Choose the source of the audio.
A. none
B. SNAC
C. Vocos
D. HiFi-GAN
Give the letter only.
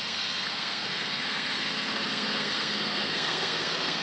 B